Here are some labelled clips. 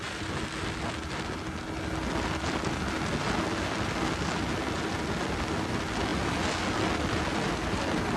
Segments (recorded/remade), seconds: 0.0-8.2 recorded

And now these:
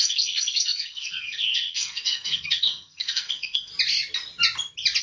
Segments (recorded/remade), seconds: 0.0-3.7 remade; 3.7-5.0 recorded

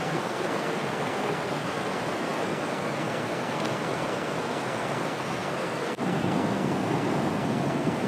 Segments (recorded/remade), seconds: 0.0-8.1 remade

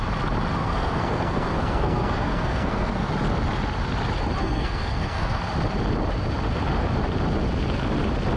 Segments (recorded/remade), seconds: 0.0-0.6 recorded; 0.6-3.1 remade; 3.1-4.4 recorded; 4.4-5.4 remade; 5.4-8.4 recorded

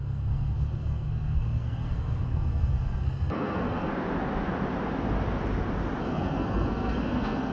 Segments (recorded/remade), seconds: 0.0-3.9 remade; 3.9-6.0 recorded; 6.0-7.5 remade

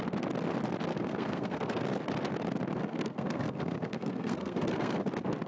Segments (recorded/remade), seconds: 0.0-0.9 recorded; 0.9-1.8 remade; 1.8-2.8 recorded; 2.8-5.0 remade; 5.0-5.5 recorded

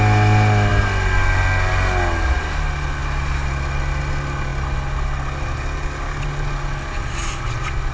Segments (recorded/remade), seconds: 0.0-7.9 recorded